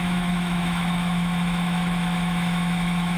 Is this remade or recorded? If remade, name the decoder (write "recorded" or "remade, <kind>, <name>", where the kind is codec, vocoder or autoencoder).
remade, autoencoder, DAC-VAE